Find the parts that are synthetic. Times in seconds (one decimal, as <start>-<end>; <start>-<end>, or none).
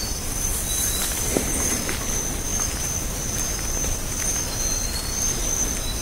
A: none